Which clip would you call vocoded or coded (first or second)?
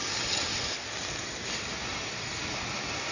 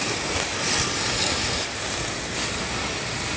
second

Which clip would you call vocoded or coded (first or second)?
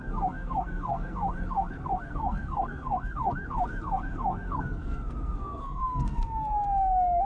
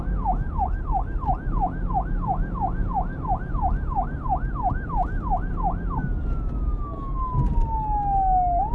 first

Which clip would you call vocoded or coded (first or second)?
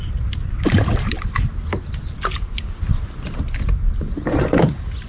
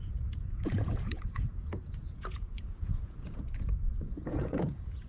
second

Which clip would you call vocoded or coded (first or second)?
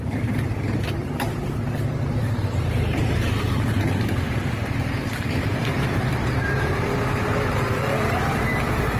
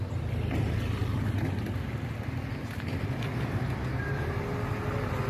first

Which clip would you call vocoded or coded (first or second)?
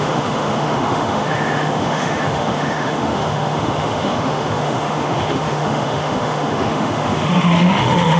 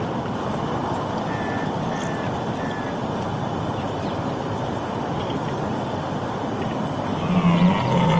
first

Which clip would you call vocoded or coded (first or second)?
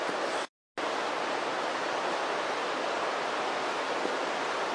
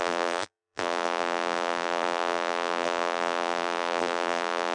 second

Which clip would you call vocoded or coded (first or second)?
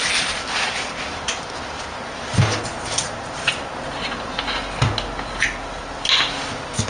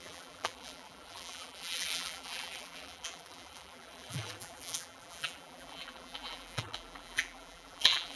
second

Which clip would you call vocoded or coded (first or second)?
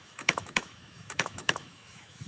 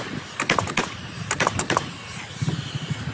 first